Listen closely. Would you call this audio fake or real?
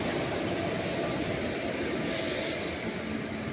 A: real